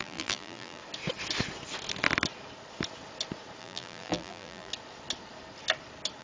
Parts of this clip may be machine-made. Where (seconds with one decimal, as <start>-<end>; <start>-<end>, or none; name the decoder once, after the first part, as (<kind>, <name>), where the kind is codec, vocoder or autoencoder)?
0.0-0.8 (vocoder, BigVGAN v2); 3.6-4.7

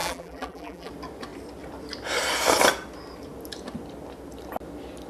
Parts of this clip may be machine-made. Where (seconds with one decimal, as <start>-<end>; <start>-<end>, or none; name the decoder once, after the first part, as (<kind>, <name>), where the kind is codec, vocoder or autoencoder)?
0.0-0.9 (vocoder, BigVGAN v2)

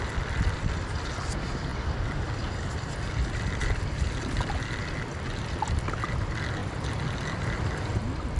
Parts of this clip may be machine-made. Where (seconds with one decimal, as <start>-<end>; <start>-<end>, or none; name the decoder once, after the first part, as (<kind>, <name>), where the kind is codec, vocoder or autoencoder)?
0.0-1.7 (vocoder, BigVGAN v2); 6.1-6.6

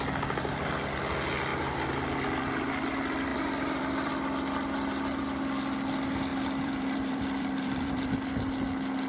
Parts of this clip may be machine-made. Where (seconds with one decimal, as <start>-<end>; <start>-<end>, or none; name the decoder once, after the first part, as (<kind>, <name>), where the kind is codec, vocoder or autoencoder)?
1.5-2.4 (vocoder, BigVGAN v2); 3.3-4.1; 6.3-8.1

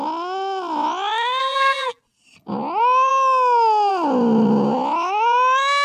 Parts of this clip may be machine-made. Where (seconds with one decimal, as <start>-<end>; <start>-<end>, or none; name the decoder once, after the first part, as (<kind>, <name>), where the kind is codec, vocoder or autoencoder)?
1.4-2.0 (vocoder, BigVGAN v2)